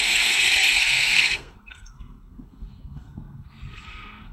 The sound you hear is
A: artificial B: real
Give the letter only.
A